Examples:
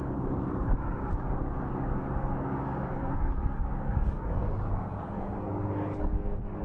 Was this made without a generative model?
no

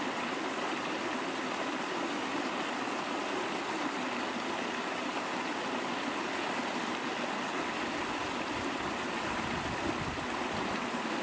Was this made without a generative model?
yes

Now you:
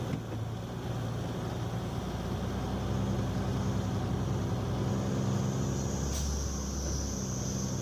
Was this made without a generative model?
yes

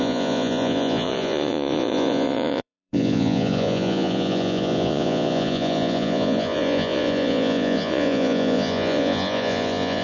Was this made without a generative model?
no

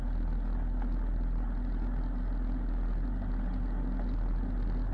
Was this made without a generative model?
yes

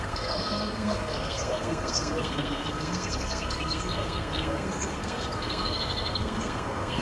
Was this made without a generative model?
no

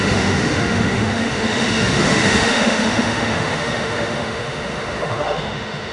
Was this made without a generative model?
no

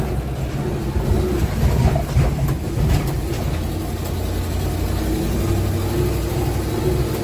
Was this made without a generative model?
yes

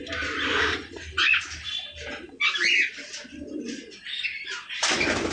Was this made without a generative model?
yes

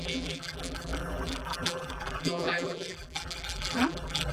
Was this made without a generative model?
no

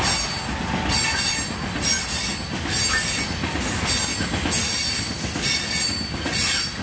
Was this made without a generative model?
yes